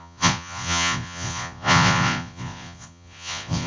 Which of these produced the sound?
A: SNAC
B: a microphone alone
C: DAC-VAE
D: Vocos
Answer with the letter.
D